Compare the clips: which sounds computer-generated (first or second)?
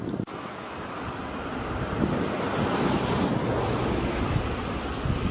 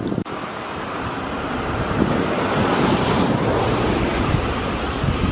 second